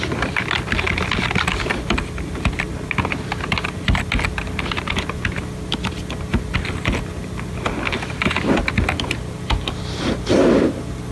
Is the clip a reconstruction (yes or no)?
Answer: no